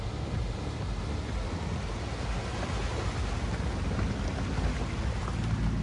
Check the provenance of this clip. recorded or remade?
recorded